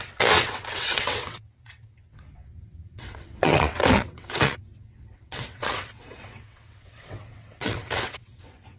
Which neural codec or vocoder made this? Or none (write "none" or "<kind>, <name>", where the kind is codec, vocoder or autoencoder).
vocoder, WaveNeXt